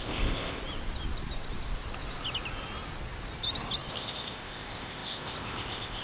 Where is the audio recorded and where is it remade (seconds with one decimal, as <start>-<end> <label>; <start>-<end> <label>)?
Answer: 0.0-0.6 remade; 0.6-3.9 recorded; 3.9-6.0 remade